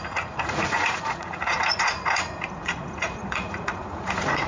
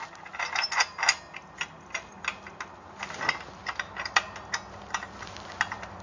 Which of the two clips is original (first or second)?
second